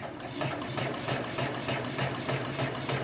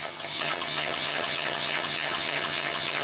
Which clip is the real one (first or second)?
first